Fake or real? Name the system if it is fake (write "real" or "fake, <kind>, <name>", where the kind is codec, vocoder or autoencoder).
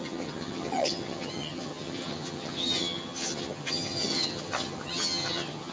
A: fake, vocoder, HiFi-GAN